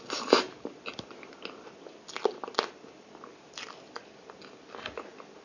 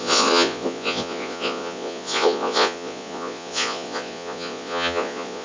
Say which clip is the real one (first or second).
first